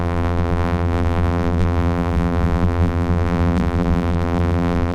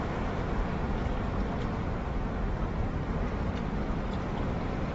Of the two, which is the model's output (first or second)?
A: first